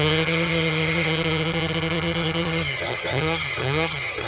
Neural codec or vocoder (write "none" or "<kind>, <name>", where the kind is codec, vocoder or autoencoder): vocoder, HiFi-GAN